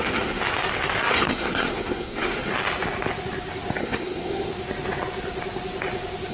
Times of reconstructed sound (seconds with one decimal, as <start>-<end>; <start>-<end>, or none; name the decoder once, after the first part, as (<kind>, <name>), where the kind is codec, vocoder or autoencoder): 0.0-0.4 (codec, SNAC); 1.1-2.5; 3.8-4.5